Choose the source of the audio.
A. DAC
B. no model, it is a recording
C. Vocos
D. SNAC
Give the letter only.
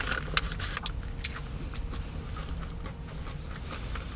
B